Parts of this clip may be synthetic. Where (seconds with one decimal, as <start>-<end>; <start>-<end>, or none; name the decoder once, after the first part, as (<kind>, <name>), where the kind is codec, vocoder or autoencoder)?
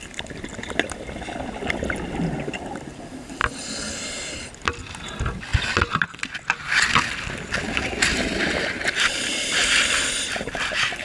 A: none